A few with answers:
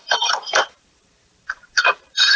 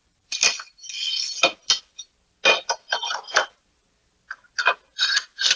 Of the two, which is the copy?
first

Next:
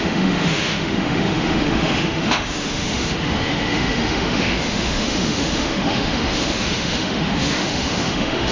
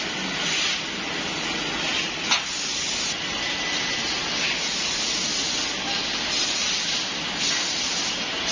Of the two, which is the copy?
first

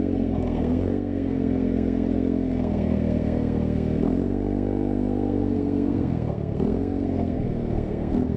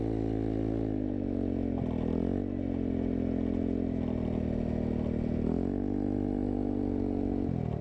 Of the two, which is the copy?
first